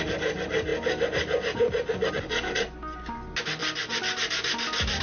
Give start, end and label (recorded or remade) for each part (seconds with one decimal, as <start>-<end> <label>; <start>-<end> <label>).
0.0-5.0 recorded